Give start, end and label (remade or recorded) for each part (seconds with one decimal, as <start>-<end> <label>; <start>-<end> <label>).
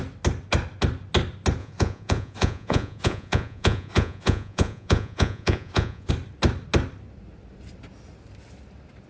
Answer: 0.0-1.6 recorded; 1.6-6.1 remade; 6.1-9.1 recorded